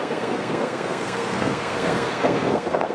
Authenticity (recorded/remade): remade